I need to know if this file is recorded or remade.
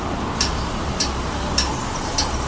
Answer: recorded